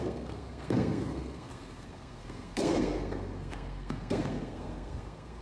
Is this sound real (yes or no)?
no